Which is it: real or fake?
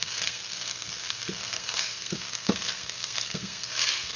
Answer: fake